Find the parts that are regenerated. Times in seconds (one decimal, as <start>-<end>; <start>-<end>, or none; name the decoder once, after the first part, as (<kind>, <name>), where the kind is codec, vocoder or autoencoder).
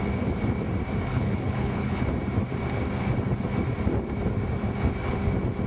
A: 1.1-2.0 (codec, HILCodec)